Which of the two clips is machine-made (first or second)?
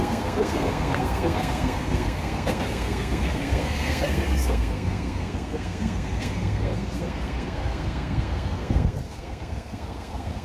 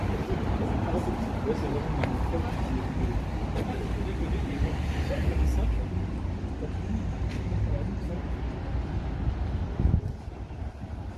first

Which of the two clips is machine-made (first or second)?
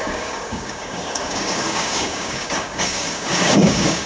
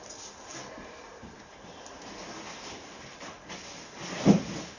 first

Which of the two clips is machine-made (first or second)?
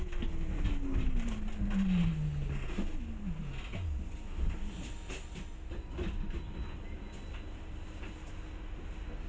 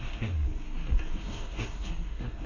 second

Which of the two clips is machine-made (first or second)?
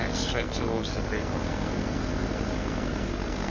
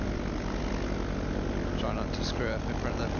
first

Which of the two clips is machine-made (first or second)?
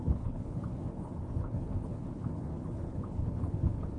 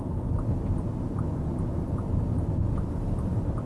first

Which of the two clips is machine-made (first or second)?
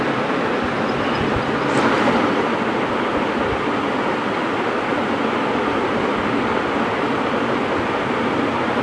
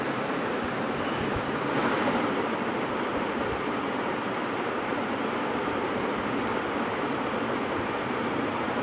second